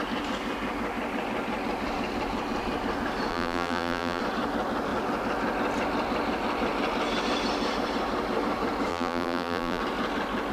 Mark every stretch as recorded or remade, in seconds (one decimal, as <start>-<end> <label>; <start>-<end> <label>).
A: 0.0-3.3 recorded; 3.3-4.2 remade; 4.2-8.9 recorded; 8.9-9.8 remade; 9.8-10.5 recorded